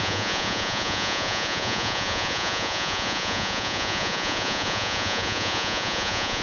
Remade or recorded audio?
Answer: remade